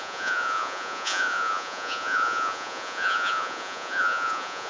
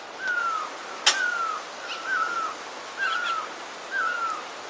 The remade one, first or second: first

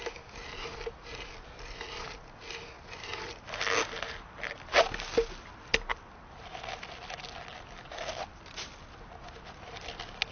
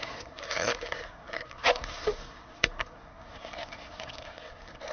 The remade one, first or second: second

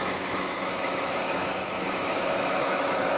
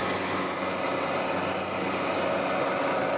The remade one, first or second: first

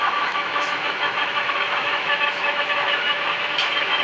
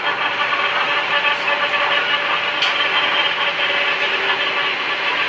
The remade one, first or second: first